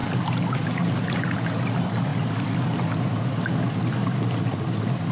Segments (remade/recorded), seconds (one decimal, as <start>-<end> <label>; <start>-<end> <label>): 0.0-5.1 recorded